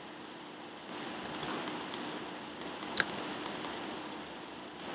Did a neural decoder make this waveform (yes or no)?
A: no